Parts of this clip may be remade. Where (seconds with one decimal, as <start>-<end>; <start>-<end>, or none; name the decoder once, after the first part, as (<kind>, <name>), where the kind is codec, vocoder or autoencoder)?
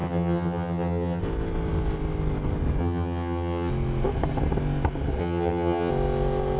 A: 0.0-1.2 (vocoder, HiFi-GAN); 2.8-3.7; 5.2-5.9